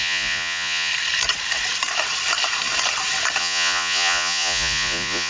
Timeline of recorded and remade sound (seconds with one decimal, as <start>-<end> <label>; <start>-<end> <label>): 0.0-0.9 remade; 0.9-3.4 recorded; 3.4-5.3 remade